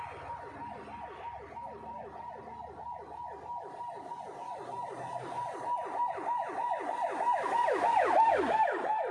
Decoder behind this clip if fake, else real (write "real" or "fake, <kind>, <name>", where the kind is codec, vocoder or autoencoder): real